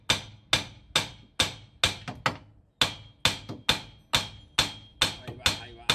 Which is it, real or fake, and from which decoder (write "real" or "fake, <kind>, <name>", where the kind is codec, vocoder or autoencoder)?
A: real